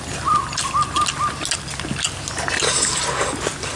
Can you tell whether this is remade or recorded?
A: recorded